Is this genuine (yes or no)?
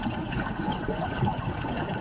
no